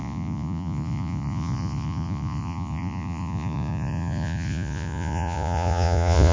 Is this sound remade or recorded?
remade